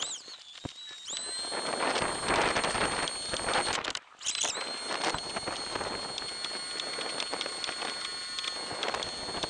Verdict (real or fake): real